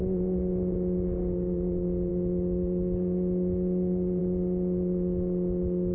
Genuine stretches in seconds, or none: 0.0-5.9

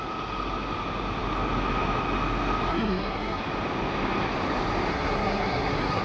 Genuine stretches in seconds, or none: 0.0-2.7; 3.4-4.9